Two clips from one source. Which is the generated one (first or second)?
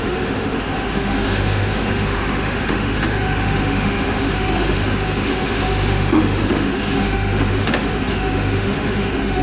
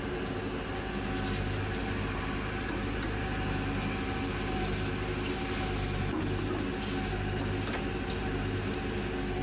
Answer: first